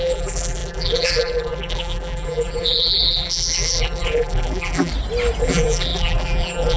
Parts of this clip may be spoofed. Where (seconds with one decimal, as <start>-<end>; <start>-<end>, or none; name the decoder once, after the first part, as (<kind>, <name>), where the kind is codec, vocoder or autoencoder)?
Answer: 0.0-4.9 (vocoder, BigVGAN v2); 5.4-6.8